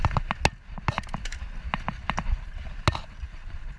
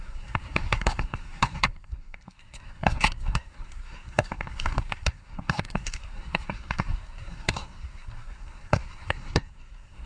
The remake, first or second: second